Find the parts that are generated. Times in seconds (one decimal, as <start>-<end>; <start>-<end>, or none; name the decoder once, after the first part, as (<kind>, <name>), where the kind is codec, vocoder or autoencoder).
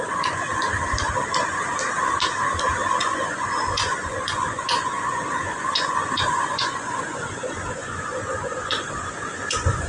0.0-0.5 (vocoder, Vocos); 2.9-9.9